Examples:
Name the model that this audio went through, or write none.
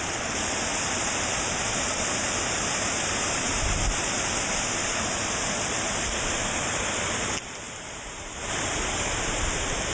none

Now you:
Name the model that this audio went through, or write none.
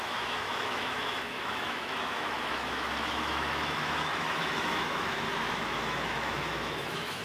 autoencoder, DAC-VAE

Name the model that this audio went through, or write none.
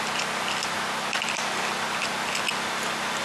none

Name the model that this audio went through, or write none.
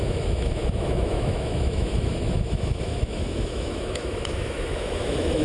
autoencoder, DAC-VAE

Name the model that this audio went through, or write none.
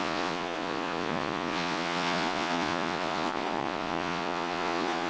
vocoder, Vocos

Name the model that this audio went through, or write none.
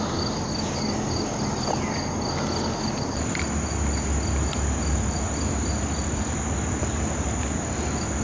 none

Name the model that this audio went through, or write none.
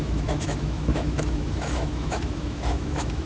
autoencoder, DAC-VAE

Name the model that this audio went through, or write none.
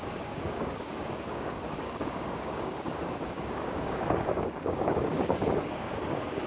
codec, DAC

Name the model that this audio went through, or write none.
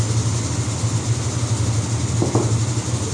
none